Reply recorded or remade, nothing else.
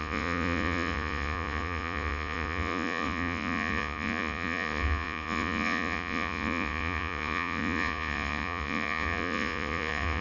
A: remade